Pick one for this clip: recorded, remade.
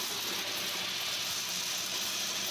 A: recorded